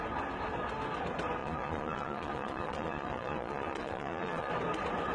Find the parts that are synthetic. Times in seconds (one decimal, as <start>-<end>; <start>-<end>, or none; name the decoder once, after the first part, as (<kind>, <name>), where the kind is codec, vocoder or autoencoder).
1.4-4.5 (vocoder, Vocos)